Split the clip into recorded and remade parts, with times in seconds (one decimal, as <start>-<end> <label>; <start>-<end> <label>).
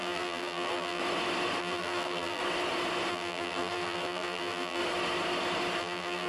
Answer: 0.0-1.0 remade; 1.0-1.6 recorded; 1.6-2.4 remade; 2.4-3.1 recorded; 3.1-4.8 remade; 4.8-5.8 recorded; 5.8-6.3 remade